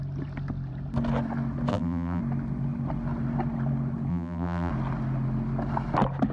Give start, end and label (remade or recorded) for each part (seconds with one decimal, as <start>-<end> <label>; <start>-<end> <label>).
0.0-1.7 recorded; 1.7-2.2 remade; 2.2-4.1 recorded; 4.1-4.7 remade; 4.7-6.3 recorded